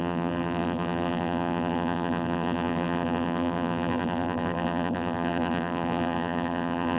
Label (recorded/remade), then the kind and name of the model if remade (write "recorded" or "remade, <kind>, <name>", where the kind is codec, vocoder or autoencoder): remade, vocoder, BigVGAN v2